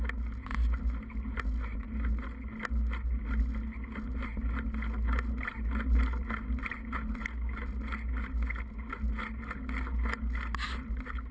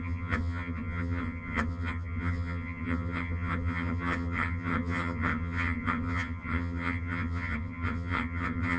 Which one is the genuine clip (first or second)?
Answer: first